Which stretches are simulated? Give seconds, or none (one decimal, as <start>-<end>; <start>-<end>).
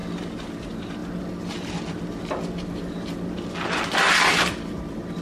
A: none